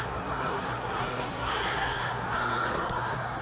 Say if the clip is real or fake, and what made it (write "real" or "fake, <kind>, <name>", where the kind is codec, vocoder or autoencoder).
fake, codec, SNAC